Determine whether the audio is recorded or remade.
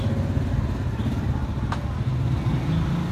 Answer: recorded